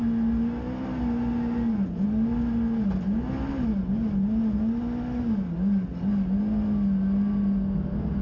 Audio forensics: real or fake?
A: real